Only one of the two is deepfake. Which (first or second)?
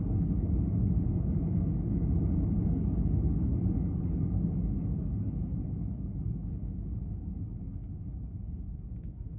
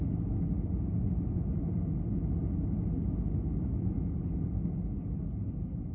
first